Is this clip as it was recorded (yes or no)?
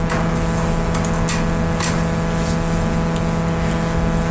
yes